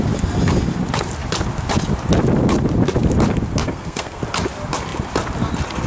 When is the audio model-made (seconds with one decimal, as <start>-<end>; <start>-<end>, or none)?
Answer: 3.6-4.2